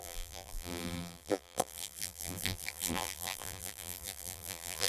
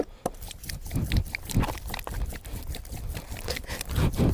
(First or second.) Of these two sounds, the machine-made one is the first